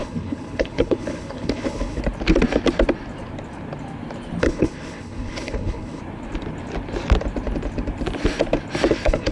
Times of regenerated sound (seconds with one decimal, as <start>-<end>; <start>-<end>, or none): 0.0-2.0; 4.4-6.0; 8.9-9.3